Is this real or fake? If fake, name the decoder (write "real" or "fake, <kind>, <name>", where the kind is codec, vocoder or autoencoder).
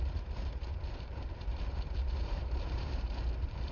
fake, vocoder, BigVGAN v2